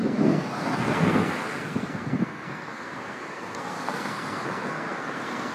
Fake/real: fake